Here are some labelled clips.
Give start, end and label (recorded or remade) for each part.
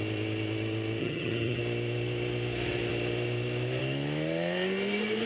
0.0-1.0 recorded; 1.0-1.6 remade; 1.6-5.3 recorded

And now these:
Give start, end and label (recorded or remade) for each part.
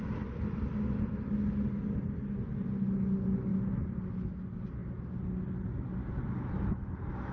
0.0-7.3 recorded